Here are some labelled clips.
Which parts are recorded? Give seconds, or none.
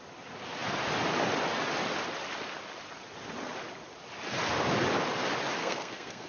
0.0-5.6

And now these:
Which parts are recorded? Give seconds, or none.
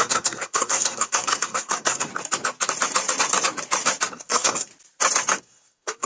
2.1-4.1; 4.7-5.4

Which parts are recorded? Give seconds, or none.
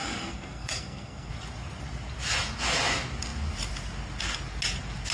1.3-5.1